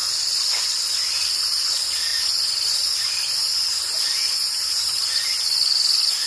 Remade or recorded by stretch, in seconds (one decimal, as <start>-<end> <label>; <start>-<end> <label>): 0.0-6.3 recorded